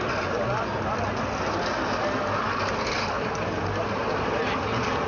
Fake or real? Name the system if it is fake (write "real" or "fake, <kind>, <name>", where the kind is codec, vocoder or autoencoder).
real